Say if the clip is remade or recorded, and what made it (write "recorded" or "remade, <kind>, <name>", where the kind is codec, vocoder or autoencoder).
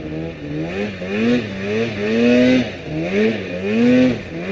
recorded